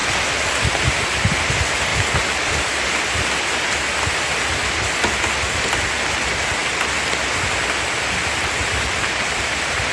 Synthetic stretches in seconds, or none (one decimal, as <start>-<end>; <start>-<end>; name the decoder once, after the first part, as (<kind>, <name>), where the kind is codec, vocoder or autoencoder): none